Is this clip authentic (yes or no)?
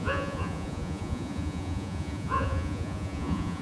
no